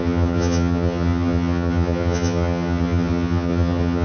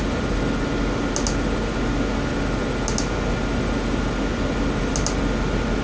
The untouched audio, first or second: second